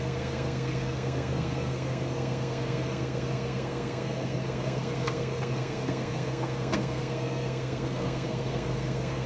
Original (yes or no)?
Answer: no